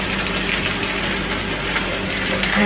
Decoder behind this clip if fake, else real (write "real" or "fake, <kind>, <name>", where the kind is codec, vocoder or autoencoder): real